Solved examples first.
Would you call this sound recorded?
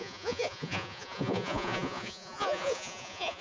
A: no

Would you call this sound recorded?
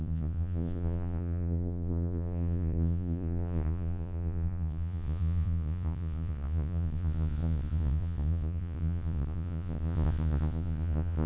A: no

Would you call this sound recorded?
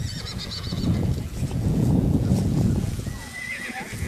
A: no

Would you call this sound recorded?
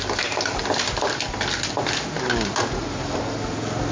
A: yes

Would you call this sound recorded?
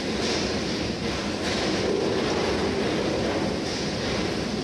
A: yes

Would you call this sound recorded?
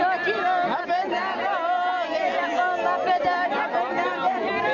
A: yes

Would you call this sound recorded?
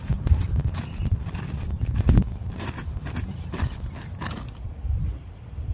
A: yes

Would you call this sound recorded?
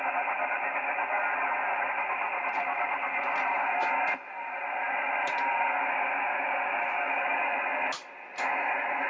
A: yes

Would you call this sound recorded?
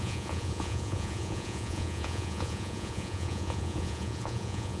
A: no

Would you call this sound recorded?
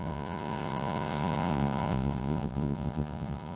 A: no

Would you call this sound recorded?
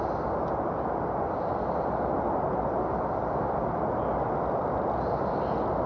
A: yes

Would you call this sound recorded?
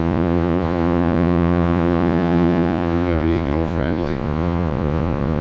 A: no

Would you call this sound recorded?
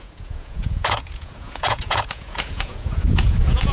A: no